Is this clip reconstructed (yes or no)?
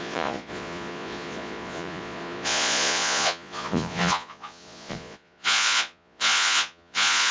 yes